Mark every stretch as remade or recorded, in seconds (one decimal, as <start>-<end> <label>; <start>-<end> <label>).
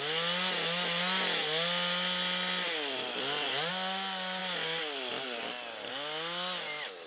0.0-7.1 recorded